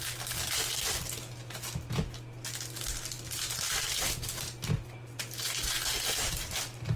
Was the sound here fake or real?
real